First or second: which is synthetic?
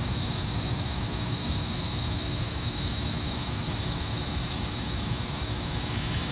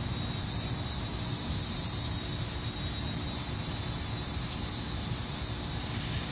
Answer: first